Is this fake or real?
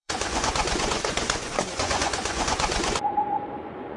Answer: fake